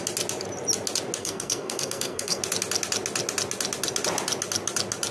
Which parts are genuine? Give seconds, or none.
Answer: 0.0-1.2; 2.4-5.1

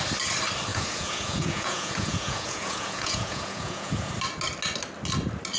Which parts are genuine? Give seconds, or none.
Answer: 0.0-0.7; 4.1-5.6

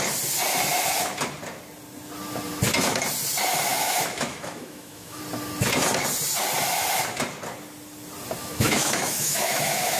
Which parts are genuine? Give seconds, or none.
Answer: 0.0-3.7; 5.2-8.4

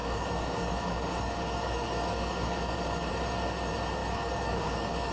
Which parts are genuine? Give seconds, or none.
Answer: 3.1-4.0

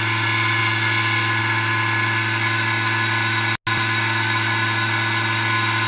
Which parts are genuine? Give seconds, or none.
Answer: 0.0-5.9

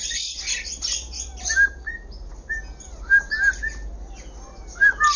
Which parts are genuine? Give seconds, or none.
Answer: 0.0-5.2